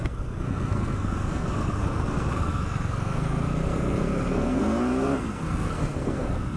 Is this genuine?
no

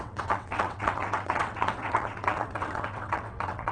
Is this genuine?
no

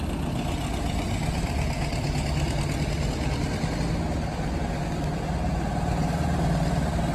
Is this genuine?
yes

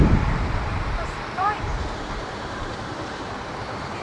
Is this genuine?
no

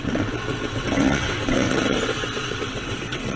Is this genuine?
no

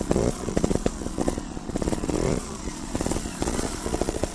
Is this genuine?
no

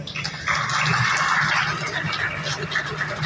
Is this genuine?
yes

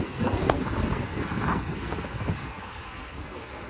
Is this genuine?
no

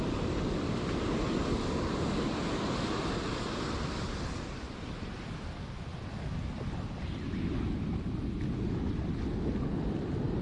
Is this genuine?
yes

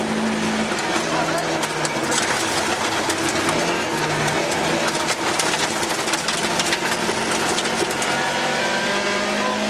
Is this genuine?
yes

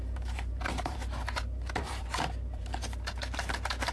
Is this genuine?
no